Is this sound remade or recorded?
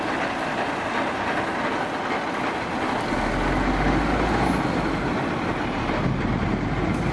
recorded